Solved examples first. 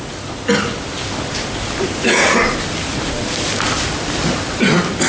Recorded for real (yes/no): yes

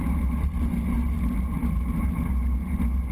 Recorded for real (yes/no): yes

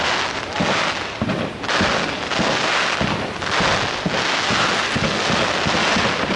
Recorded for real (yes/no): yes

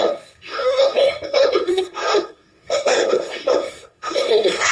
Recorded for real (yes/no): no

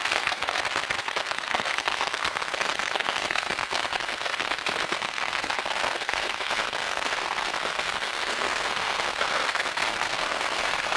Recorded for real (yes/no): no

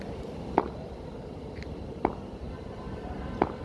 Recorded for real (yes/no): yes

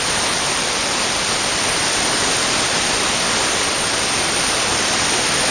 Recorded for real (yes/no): yes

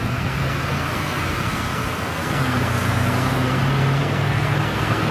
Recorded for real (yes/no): no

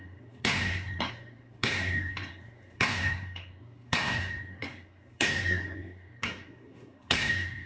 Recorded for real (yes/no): no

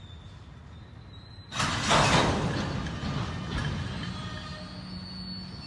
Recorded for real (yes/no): yes